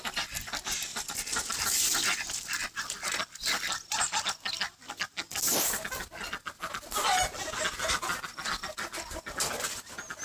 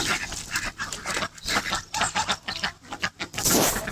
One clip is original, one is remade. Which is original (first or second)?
first